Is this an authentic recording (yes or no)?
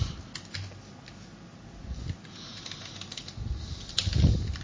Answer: yes